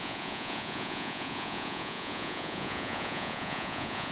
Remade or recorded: remade